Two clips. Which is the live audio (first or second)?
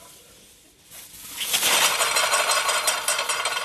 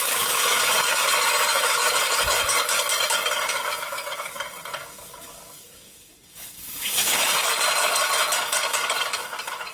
first